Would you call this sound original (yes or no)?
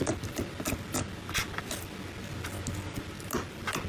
yes